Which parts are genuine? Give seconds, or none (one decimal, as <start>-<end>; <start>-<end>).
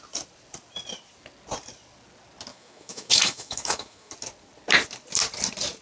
0.0-2.5; 4.1-5.8